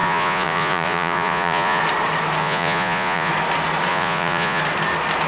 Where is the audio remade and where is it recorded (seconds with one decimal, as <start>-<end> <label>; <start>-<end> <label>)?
0.0-1.8 remade; 1.8-2.4 recorded; 2.4-3.3 remade; 3.3-3.9 recorded; 3.9-4.6 remade; 4.6-5.3 recorded